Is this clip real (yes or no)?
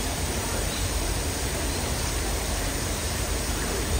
no